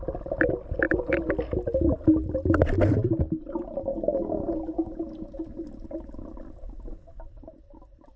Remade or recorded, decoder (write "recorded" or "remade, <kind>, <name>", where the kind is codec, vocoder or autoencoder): recorded